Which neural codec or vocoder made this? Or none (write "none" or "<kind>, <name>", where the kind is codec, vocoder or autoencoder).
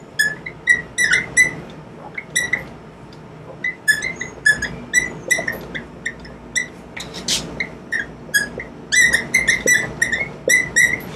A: none